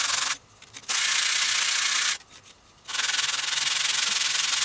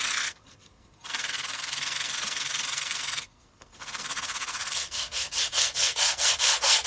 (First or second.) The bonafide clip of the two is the first